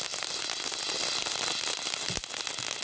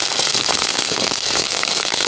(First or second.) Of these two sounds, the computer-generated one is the second